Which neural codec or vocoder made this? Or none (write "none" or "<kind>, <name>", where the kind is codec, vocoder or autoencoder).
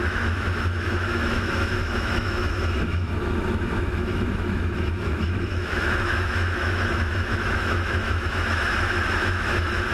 autoencoder, DAC-VAE